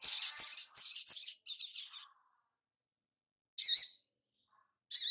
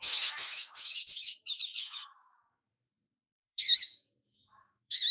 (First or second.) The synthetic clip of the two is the second